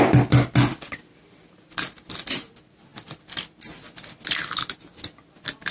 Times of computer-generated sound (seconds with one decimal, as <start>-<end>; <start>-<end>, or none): none